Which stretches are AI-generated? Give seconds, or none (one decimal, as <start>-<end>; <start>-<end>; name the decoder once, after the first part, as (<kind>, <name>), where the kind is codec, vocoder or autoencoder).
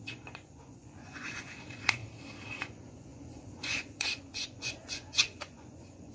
0.0-2.0 (vocoder, Vocos); 2.6-6.1